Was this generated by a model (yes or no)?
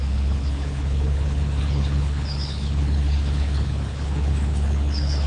yes